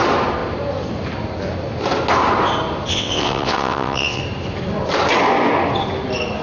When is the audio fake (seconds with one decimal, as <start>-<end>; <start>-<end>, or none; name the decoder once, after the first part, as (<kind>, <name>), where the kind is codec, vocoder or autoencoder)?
2.9-4.2 (vocoder, WaveNeXt)

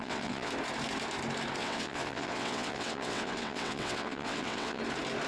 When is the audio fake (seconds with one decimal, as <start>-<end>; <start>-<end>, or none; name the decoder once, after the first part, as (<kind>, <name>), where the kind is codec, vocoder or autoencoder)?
0.0-0.5 (vocoder, WaveNeXt); 1.6-4.8

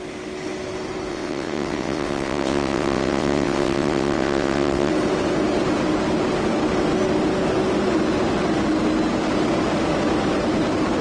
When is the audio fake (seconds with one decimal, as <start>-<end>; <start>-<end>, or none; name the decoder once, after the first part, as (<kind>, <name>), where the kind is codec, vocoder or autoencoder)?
1.1-4.9 (vocoder, WaveNeXt)

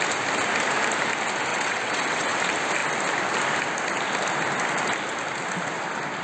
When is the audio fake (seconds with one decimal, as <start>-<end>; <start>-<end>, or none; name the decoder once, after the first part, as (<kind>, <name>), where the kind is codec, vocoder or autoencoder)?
1.5-2.4 (vocoder, WaveNeXt)

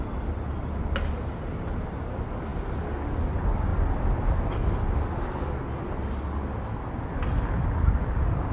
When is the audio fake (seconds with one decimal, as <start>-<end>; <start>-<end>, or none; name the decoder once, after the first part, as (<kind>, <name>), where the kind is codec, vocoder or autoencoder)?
none